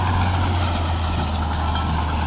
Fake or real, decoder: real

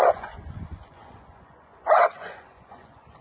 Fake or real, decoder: fake, vocoder, Vocos